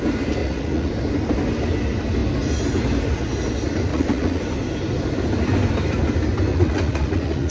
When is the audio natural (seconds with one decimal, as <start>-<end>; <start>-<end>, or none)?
0.0-0.4; 0.9-3.9; 4.4-6.5